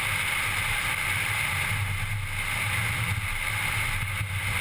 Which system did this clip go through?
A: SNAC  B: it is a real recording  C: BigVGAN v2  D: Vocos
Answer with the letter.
B